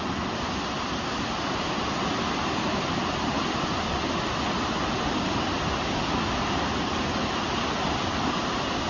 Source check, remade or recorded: recorded